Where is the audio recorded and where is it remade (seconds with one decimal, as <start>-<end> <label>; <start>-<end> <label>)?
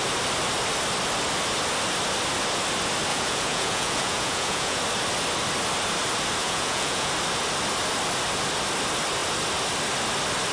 0.0-3.1 recorded; 3.1-4.8 remade; 4.8-6.4 recorded; 6.4-7.1 remade; 7.1-10.5 recorded